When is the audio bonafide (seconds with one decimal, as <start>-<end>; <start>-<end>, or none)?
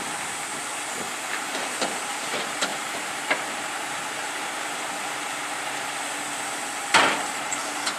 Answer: 0.5-1.2; 5.4-7.4